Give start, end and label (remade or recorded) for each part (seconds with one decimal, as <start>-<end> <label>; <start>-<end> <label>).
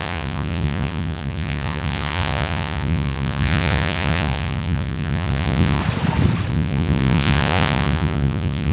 0.0-5.8 remade; 5.8-6.5 recorded; 6.5-8.7 remade